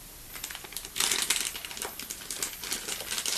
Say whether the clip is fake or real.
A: real